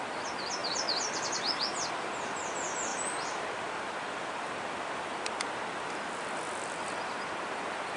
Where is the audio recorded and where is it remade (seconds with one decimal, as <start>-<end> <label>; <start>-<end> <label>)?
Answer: 0.0-0.6 recorded; 0.6-1.9 remade; 1.9-2.9 recorded; 2.9-7.3 remade; 7.3-8.0 recorded

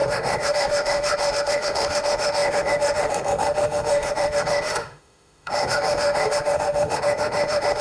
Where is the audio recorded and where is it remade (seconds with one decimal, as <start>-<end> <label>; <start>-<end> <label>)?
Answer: 0.0-7.8 remade

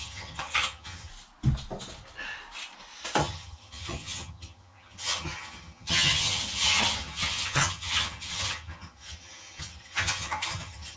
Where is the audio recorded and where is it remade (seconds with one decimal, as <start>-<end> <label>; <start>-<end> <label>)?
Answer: 0.0-1.1 remade; 1.1-3.2 recorded; 3.2-11.0 remade

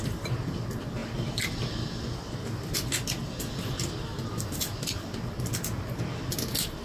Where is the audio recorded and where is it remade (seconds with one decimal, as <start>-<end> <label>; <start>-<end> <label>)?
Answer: 0.0-6.8 recorded

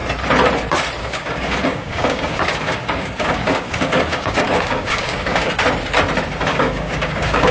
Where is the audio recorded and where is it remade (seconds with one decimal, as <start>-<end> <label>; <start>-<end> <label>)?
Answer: 0.0-1.0 recorded; 1.0-5.5 remade; 5.5-6.5 recorded; 6.5-7.5 remade

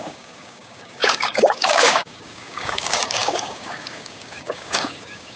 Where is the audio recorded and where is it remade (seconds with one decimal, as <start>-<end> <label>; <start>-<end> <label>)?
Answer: 0.0-5.4 remade

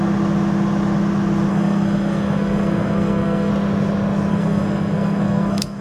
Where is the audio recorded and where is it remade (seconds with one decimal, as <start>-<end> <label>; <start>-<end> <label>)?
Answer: 0.0-1.5 recorded; 1.5-3.5 remade; 3.5-4.3 recorded; 4.3-5.8 remade

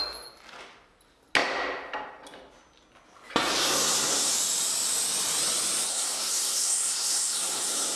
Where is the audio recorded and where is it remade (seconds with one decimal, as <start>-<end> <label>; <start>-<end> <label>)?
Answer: 0.0-3.6 recorded; 3.6-4.3 remade; 4.3-5.9 recorded; 5.9-8.0 remade